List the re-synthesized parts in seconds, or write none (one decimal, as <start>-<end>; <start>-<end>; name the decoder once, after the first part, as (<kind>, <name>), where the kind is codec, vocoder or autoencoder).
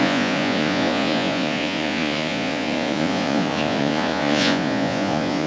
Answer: 0.0-5.5 (vocoder, Vocos)